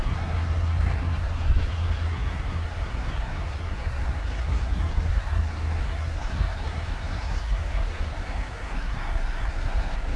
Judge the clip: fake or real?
fake